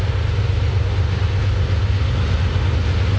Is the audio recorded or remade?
recorded